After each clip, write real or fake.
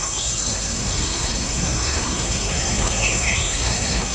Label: fake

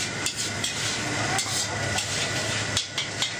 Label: real